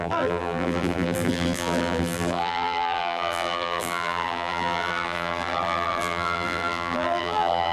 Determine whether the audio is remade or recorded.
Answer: remade